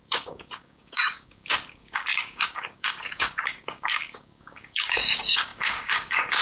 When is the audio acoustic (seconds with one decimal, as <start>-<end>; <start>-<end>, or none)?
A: none